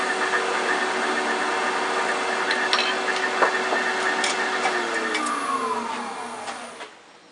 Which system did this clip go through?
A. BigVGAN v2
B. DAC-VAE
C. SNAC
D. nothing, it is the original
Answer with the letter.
D